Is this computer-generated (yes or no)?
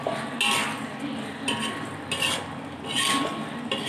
no